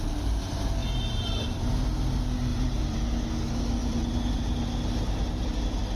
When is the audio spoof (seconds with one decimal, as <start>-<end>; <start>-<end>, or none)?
0.8-1.7; 2.5-3.3; 3.8-5.5